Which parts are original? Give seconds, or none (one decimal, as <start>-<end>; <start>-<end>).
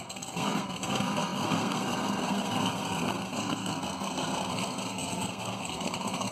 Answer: none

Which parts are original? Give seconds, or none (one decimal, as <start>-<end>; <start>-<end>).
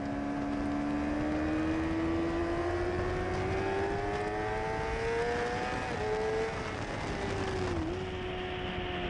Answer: 0.0-9.1